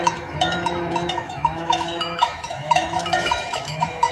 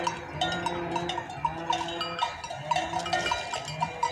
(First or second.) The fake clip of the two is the first